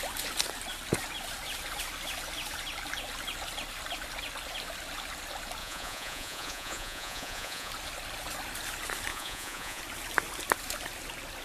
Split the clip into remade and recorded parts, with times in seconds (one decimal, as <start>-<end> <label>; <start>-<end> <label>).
0.0-5.6 recorded; 5.6-7.7 remade; 7.7-9.1 recorded; 9.1-9.8 remade; 9.8-11.4 recorded